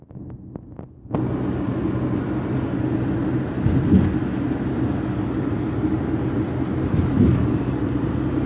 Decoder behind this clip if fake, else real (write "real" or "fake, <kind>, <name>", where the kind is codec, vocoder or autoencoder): real